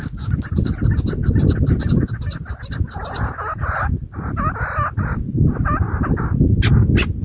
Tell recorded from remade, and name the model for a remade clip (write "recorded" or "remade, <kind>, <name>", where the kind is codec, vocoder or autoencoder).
recorded